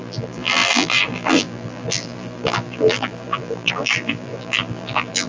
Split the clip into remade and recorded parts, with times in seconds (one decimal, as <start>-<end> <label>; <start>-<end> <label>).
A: 0.0-5.3 remade